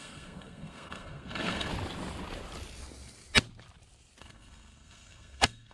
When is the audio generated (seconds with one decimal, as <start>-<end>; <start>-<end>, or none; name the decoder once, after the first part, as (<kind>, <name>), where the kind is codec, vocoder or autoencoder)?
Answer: 0.0-1.7 (codec, SNAC); 4.2-5.7